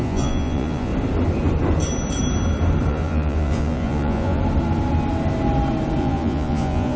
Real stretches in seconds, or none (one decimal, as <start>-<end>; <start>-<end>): 0.9-2.9; 4.4-6.0